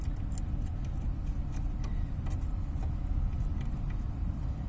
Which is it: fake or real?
real